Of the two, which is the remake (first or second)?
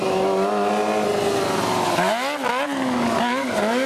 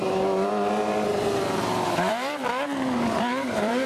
second